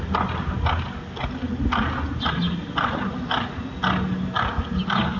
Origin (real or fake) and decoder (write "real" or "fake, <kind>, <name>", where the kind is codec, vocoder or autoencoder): real